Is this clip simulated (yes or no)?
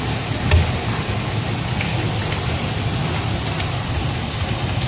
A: no